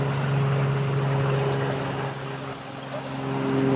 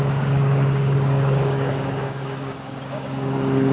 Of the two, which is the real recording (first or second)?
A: first